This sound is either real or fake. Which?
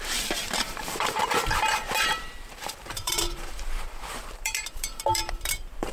fake